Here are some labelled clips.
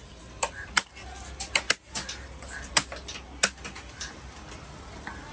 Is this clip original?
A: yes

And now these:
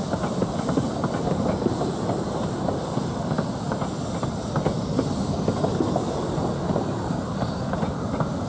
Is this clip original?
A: yes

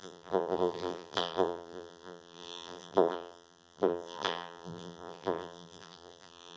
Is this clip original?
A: no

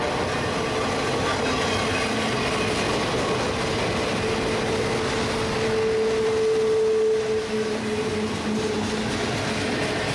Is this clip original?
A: yes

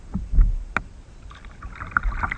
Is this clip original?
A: yes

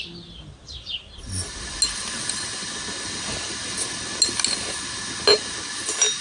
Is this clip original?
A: yes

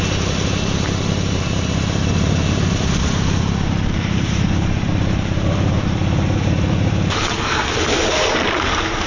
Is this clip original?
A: no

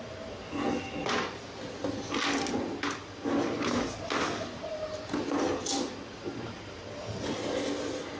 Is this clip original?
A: yes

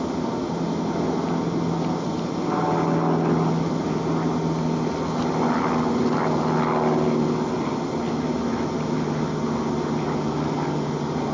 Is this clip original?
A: yes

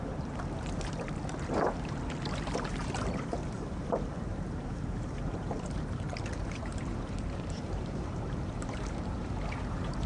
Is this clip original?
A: no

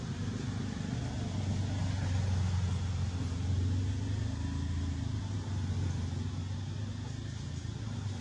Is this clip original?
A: yes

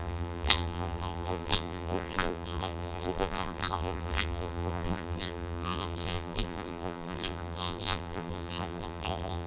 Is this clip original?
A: no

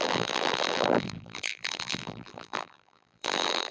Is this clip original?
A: no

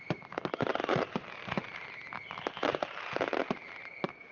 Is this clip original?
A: no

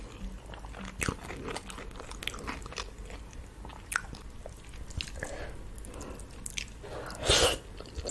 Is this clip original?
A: yes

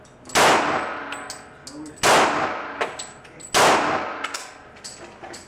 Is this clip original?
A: yes